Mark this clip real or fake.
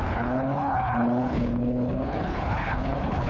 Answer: fake